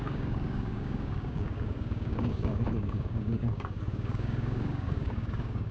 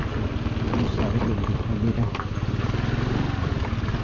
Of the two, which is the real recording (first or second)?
second